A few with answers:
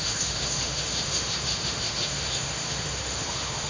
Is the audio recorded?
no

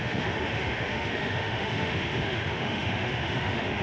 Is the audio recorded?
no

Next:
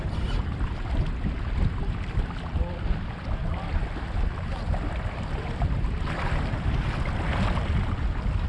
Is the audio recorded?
yes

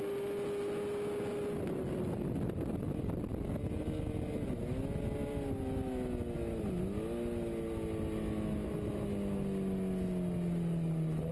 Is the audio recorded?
yes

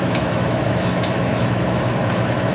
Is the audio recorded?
no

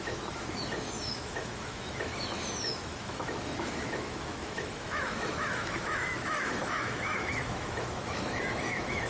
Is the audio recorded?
no